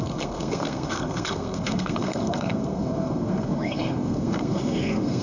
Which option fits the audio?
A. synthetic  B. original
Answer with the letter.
A